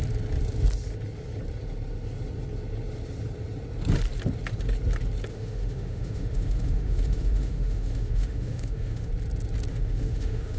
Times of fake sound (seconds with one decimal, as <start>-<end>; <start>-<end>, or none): 5.3-9.1; 9.7-10.6